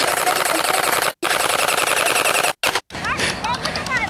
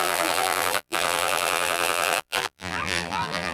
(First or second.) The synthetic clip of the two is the second